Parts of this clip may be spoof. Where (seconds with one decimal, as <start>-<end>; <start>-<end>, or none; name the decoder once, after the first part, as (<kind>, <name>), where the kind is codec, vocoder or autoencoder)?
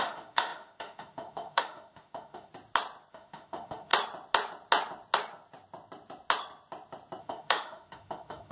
0.0-2.5 (autoencoder, DAC-VAE); 3.1-3.9; 7.2-8.5